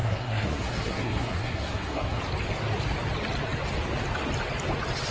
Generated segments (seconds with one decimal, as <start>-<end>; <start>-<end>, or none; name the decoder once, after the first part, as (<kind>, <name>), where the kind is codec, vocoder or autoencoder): 0.0-2.2 (codec, SNAC)